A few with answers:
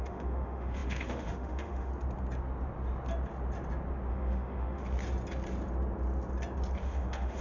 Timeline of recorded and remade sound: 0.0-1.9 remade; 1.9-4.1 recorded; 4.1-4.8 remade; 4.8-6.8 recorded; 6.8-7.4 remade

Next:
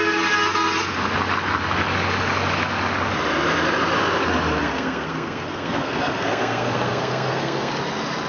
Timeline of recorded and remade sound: 0.0-4.6 recorded; 4.6-7.7 remade; 7.7-8.3 recorded

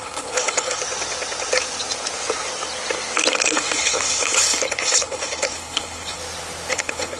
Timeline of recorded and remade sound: 0.0-0.8 remade; 0.8-3.3 recorded; 3.3-6.2 remade; 6.2-6.7 recorded; 6.7-7.2 remade

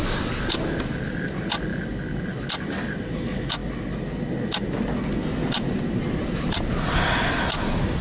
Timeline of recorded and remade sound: 0.0-8.0 recorded

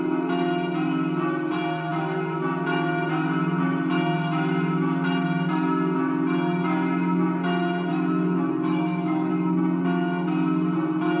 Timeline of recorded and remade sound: 0.0-7.9 recorded; 7.9-9.3 remade; 9.3-11.2 recorded